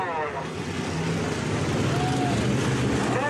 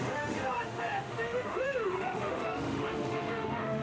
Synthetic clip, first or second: second